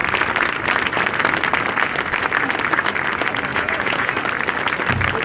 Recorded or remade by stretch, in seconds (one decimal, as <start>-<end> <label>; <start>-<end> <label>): 0.0-3.5 recorded; 3.5-4.1 remade; 4.1-5.2 recorded